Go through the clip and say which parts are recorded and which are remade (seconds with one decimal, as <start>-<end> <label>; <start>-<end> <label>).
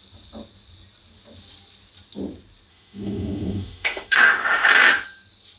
0.0-2.7 recorded; 2.7-4.7 remade; 4.7-5.6 recorded